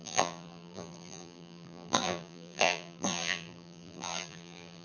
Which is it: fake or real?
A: fake